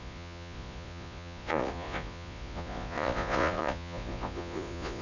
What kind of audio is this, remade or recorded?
remade